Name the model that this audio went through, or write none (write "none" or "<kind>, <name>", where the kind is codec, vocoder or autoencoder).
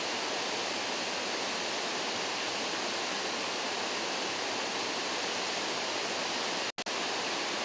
none